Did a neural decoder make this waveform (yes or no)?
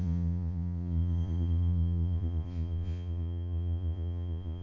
yes